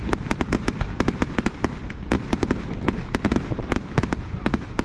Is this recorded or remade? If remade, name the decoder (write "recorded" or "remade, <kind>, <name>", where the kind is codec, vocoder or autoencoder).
recorded